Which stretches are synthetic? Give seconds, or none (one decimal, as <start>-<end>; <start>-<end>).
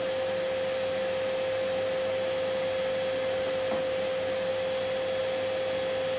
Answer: none